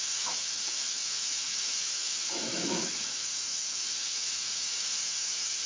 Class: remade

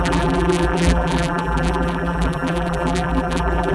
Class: remade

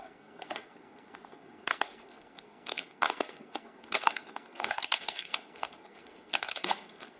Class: remade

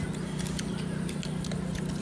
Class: recorded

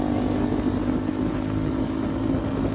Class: recorded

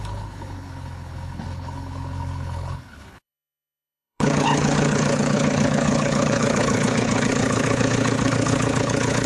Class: remade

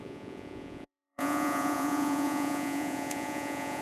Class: remade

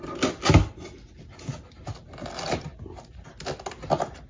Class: recorded